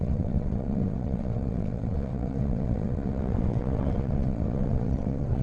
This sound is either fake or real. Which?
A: fake